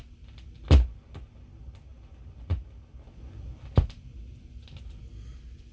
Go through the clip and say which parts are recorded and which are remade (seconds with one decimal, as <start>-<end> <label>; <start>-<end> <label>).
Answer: 0.0-5.7 recorded